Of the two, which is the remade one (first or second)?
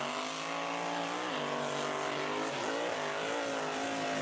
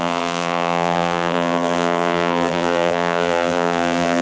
second